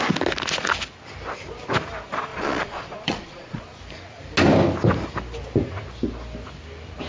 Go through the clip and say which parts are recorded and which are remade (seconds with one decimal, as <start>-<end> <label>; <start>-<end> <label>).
0.0-2.3 recorded; 2.3-3.6 remade; 3.6-7.1 recorded